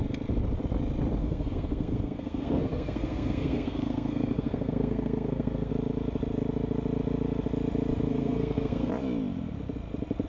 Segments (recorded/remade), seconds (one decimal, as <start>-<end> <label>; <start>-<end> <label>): 0.0-1.2 recorded; 1.2-5.7 remade; 5.7-8.1 recorded; 8.1-8.9 remade; 8.9-10.3 recorded

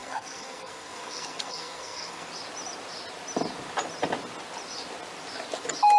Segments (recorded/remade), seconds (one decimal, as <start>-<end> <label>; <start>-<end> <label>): 0.0-2.3 remade; 2.3-6.0 recorded

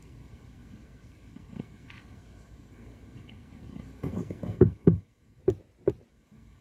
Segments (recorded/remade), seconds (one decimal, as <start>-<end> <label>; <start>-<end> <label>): 0.0-5.4 remade; 5.4-6.1 recorded; 6.1-6.6 remade